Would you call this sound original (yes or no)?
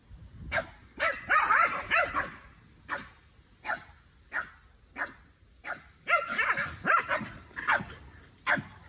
yes